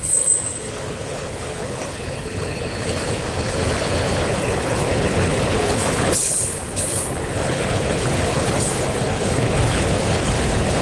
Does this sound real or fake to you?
fake